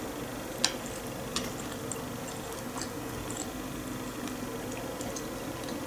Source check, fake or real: real